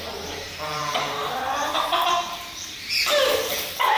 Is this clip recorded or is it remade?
remade